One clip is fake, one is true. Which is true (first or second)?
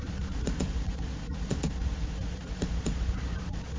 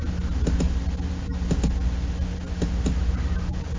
second